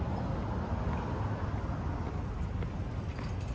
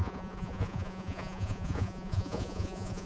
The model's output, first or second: second